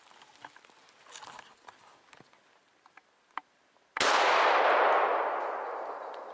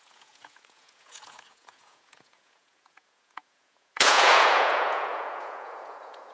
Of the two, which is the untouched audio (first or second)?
first